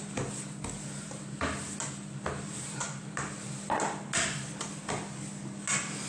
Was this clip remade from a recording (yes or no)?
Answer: no